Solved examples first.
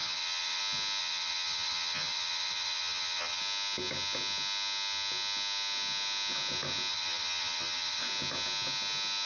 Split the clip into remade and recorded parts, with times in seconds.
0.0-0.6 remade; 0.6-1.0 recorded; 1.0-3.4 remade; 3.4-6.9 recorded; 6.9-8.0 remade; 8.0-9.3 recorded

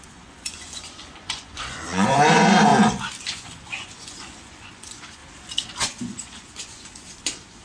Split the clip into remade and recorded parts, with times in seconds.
0.0-2.7 remade; 2.7-3.2 recorded; 3.2-5.2 remade; 5.2-5.8 recorded; 5.8-7.6 remade

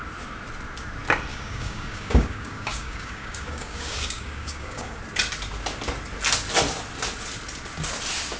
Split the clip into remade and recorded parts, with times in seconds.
0.0-1.3 recorded; 1.3-5.0 remade; 5.0-8.4 recorded

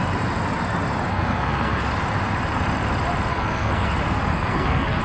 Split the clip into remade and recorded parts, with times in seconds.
0.0-1.1 recorded; 1.1-1.8 remade; 1.8-3.3 recorded; 3.3-3.9 remade; 3.9-4.3 recorded; 4.3-5.0 remade

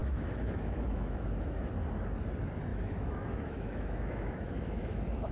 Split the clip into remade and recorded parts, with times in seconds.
0.0-1.7 remade; 1.7-2.7 recorded; 2.7-5.3 remade

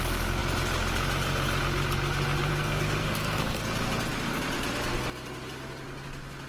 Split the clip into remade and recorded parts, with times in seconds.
0.0-2.5 recorded; 2.5-3.6 remade; 3.6-6.5 recorded

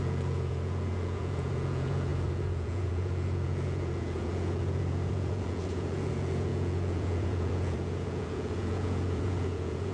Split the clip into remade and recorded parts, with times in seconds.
0.0-9.9 remade